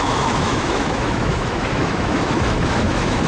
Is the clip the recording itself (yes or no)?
no